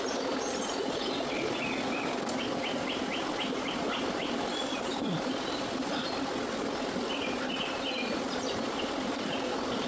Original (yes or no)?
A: yes